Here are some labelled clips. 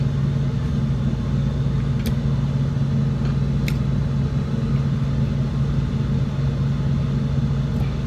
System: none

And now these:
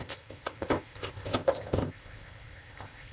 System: codec, ZipCodec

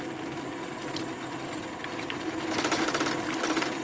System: none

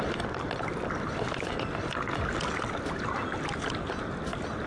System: none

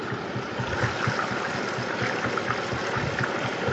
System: none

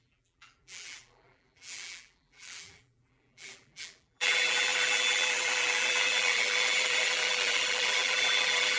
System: vocoder, BigVGAN v2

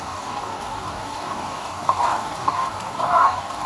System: codec, DAC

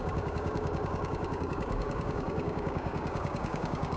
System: codec, DAC